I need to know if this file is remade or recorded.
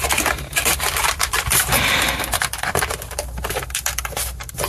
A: remade